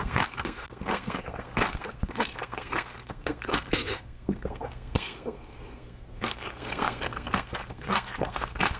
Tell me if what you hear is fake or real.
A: fake